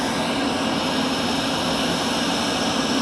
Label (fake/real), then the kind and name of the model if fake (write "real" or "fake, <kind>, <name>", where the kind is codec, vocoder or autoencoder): real